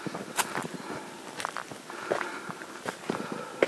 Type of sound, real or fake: real